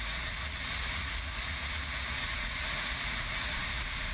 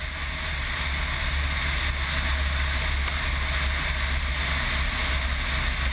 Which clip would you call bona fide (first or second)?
second